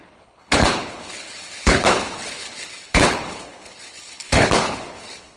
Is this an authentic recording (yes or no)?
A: no